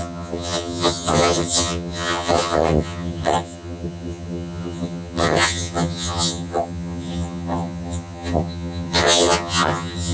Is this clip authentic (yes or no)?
no